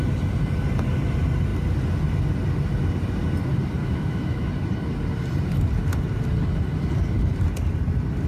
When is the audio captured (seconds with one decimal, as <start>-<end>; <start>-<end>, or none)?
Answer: 0.0-3.8; 4.5-8.3